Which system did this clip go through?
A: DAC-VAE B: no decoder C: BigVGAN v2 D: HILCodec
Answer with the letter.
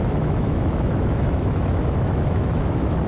A